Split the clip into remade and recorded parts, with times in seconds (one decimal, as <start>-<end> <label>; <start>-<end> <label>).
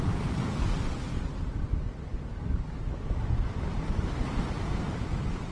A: 0.0-5.5 recorded